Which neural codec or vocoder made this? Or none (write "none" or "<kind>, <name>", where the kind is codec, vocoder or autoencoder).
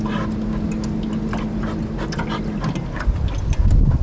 none